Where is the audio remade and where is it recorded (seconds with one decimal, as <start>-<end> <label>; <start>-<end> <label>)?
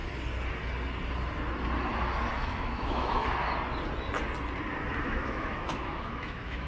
0.0-2.3 recorded; 2.3-3.2 remade; 3.2-5.0 recorded; 5.0-6.7 remade